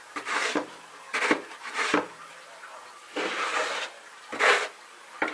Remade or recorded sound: recorded